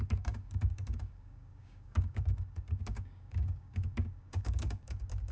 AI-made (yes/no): yes